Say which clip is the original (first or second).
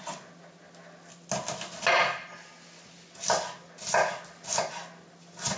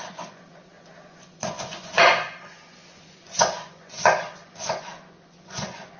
first